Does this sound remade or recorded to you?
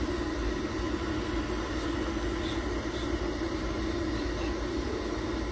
recorded